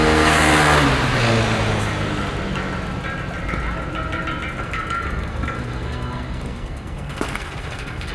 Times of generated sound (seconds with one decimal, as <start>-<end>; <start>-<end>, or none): 0.0-0.5; 4.6-8.1